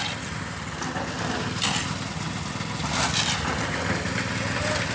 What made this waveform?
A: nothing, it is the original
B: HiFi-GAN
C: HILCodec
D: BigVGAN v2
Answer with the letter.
A